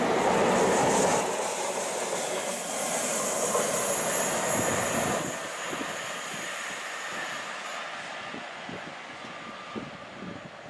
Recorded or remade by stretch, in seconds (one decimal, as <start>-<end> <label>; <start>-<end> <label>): 0.0-7.7 recorded; 7.7-9.4 remade; 9.4-10.7 recorded